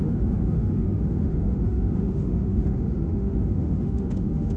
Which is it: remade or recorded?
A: remade